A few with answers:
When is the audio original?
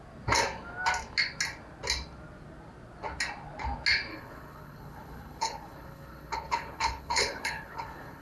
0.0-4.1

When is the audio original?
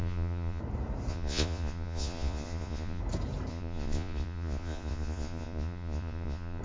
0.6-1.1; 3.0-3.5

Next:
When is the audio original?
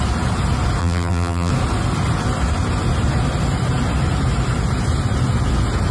0.0-0.8; 1.5-5.9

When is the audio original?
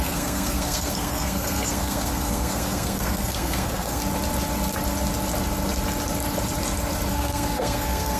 4.0-7.1